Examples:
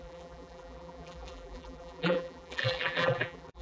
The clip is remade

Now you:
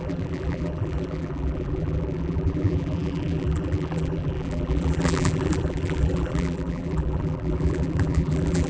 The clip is remade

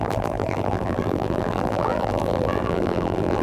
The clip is remade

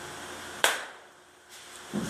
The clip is remade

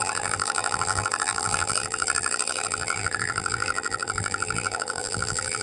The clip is remade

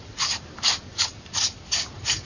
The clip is remade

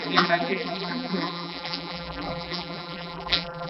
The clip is remade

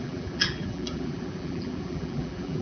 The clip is remade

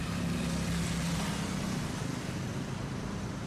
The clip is recorded